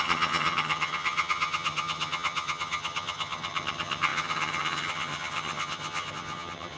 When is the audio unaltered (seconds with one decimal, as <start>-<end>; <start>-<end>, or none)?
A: none